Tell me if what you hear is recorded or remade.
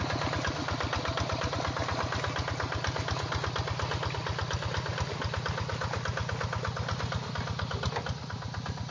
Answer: recorded